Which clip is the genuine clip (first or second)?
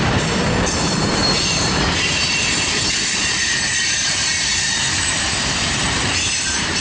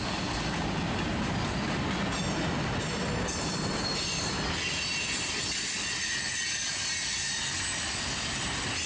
second